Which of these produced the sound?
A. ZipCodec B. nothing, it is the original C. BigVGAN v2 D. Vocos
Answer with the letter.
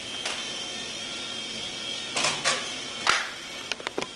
B